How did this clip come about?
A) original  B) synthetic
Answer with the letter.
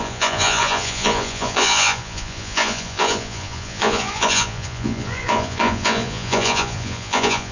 B